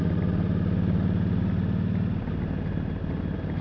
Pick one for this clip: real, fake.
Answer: real